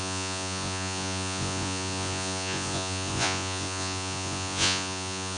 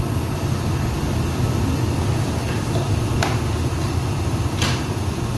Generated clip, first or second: first